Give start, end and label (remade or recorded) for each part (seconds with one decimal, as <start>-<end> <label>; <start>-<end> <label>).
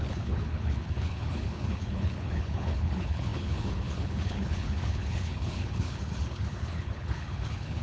0.0-7.8 remade